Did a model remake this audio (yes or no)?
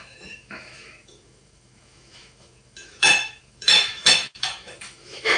yes